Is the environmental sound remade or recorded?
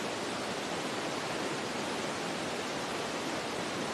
recorded